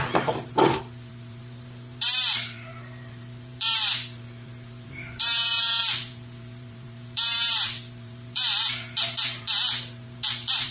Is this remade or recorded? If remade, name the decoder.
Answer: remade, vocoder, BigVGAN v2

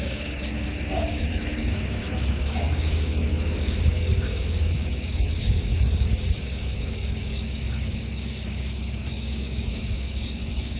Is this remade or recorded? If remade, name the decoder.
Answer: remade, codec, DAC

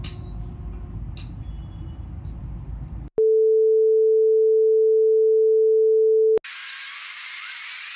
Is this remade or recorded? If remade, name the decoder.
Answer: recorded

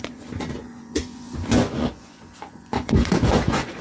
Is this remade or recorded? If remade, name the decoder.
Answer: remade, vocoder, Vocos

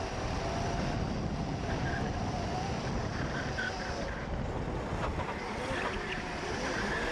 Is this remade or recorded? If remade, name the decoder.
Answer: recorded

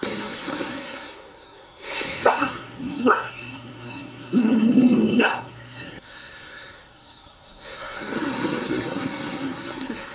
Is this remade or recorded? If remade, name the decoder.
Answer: remade, codec, SNAC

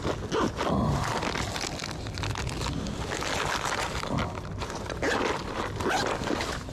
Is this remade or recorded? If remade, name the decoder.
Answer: recorded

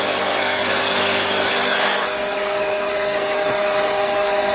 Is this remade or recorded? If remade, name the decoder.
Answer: remade, codec, SNAC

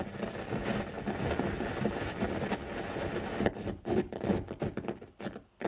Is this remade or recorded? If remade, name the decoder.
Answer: remade, vocoder, BigVGAN v2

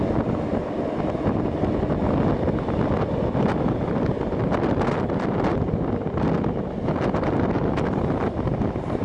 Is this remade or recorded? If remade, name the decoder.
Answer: recorded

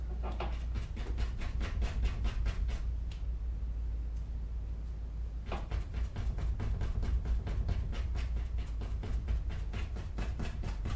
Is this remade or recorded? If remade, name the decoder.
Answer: recorded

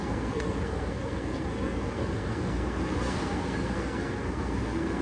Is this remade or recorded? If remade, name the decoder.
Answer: remade, codec, SNAC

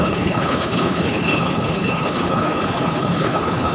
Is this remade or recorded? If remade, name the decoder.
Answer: remade, codec, HILCodec